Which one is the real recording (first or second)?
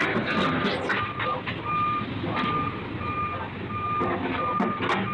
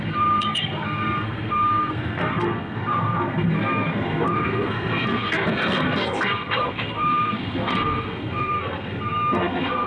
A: first